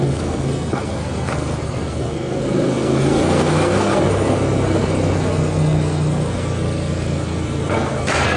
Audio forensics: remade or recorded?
remade